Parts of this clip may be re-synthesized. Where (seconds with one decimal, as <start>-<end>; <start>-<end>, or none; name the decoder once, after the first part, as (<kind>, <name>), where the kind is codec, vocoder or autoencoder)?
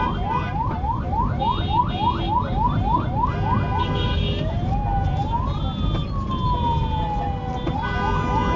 none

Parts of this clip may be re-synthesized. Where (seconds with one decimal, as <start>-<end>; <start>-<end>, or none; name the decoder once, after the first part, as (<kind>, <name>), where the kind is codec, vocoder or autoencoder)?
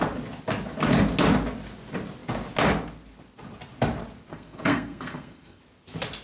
4.3-5.6 (codec, SNAC)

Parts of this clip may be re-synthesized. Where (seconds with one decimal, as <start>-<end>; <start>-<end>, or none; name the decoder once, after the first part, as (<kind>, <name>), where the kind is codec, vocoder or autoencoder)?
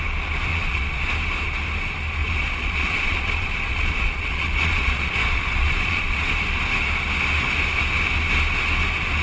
0.5-1.1 (vocoder, Vocos); 2.2-6.3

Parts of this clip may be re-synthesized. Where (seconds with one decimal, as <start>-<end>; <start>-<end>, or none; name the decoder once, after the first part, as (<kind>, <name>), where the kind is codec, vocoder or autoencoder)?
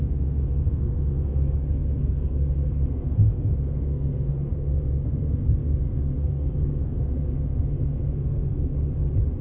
0.0-8.7 (codec, SNAC)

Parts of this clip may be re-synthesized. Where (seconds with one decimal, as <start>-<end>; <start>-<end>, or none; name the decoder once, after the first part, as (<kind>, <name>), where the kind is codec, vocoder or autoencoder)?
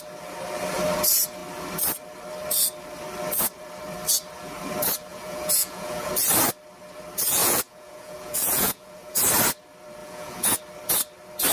5.1-6.1 (vocoder, Vocos); 7.4-9.2; 10.0-10.6